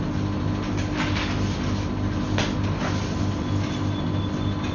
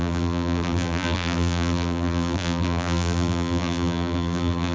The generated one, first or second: second